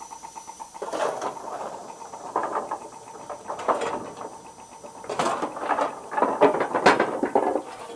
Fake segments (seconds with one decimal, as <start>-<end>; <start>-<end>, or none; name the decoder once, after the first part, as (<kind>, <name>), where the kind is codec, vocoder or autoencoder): none